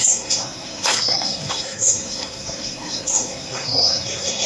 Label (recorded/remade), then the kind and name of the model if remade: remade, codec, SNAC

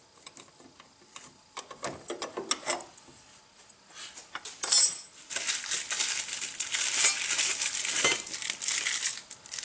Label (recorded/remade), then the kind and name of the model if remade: recorded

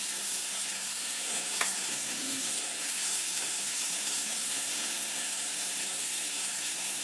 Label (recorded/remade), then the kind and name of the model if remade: remade, codec, SNAC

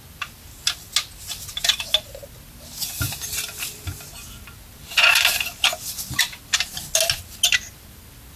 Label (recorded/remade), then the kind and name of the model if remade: recorded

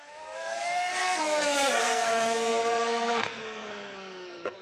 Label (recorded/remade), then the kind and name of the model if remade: remade, codec, SNAC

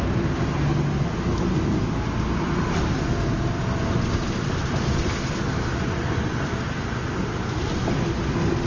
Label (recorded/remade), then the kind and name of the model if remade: recorded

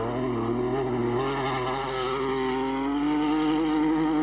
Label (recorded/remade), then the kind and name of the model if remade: recorded